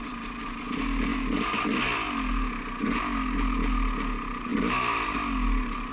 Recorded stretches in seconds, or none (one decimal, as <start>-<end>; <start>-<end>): 0.0-5.9